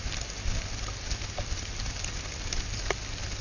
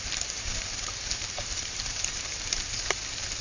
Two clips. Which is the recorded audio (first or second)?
first